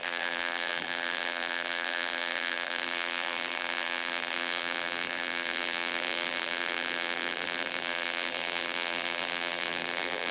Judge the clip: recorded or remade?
remade